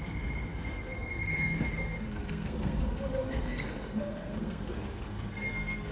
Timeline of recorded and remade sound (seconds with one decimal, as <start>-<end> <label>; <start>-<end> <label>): 0.0-5.9 remade